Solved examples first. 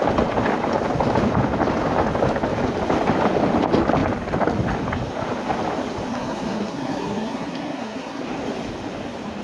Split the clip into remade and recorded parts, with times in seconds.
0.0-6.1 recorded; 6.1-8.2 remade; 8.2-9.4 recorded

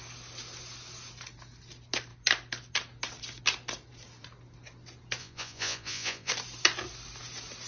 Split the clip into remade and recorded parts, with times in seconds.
0.0-5.2 recorded; 5.2-6.3 remade; 6.3-7.7 recorded

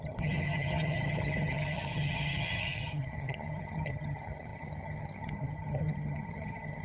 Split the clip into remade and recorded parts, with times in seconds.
0.0-6.8 remade